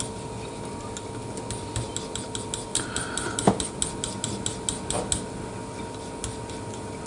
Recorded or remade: recorded